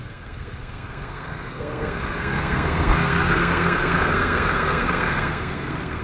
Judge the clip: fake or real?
fake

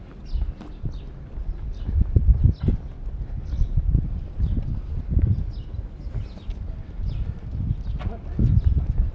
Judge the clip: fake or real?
real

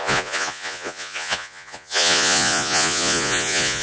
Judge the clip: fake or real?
fake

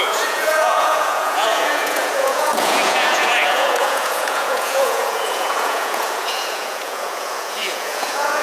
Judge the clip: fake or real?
fake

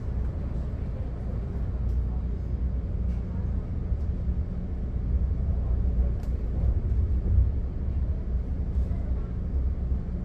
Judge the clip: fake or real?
real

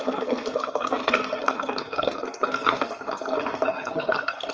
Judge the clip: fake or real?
fake